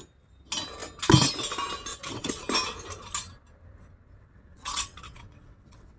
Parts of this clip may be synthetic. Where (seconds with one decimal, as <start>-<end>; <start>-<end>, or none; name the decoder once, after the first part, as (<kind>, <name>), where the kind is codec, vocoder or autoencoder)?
1.9-2.4 (vocoder, WaveNeXt); 4.2-6.0